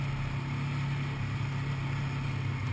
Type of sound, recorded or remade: recorded